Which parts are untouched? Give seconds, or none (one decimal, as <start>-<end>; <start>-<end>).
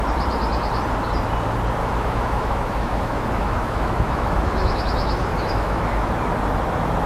0.0-1.8; 6.1-7.1